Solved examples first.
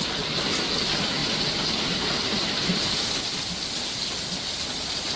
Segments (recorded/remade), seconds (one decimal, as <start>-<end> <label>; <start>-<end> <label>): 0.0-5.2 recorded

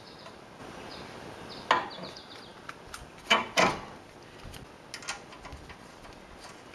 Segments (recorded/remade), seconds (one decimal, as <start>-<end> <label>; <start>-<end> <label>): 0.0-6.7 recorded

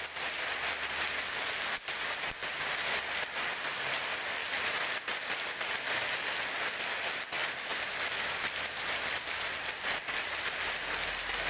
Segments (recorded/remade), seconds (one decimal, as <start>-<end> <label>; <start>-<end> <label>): 0.0-0.5 recorded; 0.5-1.3 remade; 1.3-7.7 recorded; 7.7-9.3 remade; 9.3-11.5 recorded

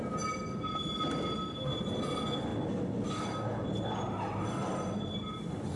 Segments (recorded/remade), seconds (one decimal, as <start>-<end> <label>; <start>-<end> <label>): 0.0-5.8 recorded

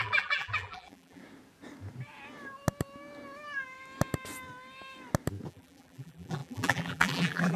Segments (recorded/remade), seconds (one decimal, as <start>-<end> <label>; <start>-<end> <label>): 0.0-1.2 remade; 1.2-5.5 recorded; 5.5-7.6 remade

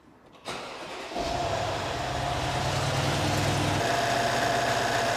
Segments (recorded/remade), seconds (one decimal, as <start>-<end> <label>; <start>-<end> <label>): 0.0-5.2 recorded

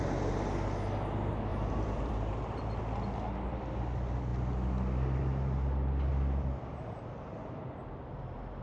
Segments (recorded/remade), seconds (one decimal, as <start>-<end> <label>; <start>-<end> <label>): 0.0-1.5 recorded; 1.5-2.8 remade; 2.8-6.1 recorded; 6.1-7.0 remade; 7.0-8.6 recorded

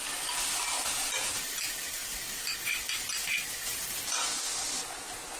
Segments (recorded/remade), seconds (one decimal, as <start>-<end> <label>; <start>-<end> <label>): 0.0-5.4 recorded